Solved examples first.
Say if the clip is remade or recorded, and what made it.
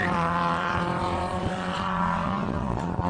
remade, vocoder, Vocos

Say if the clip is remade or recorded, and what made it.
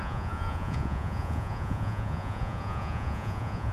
remade, vocoder, Vocos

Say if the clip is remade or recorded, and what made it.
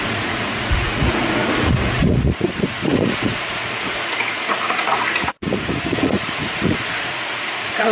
remade, vocoder, Vocos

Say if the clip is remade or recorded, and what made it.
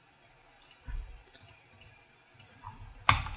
recorded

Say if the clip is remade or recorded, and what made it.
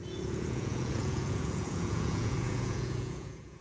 remade, vocoder, Vocos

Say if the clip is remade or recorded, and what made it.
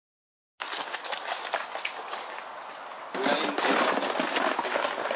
recorded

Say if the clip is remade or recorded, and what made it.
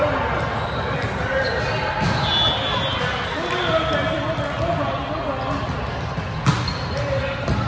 recorded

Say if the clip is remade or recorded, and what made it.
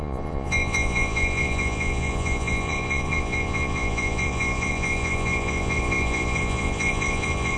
remade, vocoder, Vocos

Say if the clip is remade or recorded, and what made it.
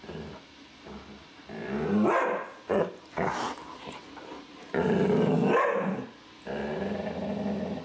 recorded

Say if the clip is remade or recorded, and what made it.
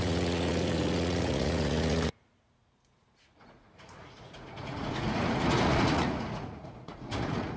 remade, vocoder, Vocos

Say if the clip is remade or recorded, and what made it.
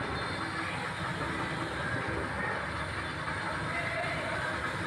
recorded